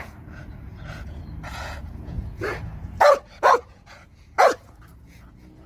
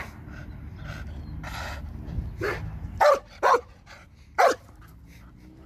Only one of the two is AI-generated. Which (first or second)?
first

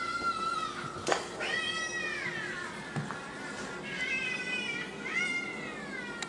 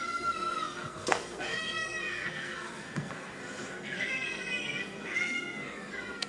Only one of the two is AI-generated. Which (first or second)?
second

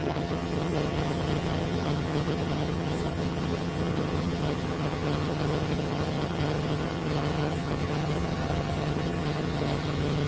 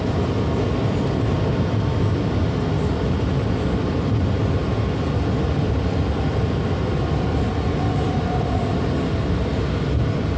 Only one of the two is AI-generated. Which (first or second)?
first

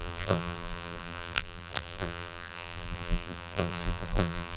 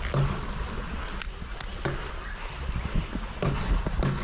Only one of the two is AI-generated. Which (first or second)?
first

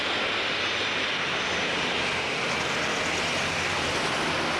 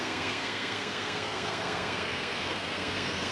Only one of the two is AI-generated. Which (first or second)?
second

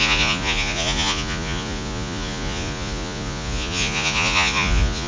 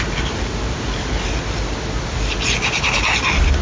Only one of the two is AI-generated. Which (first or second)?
first